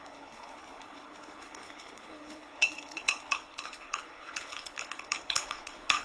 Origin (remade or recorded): remade